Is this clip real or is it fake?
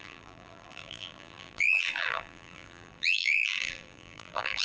fake